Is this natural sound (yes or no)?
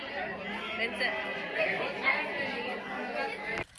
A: yes